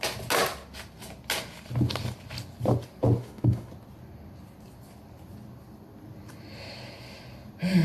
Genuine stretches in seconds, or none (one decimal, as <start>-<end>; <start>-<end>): 0.0-3.2; 3.7-7.8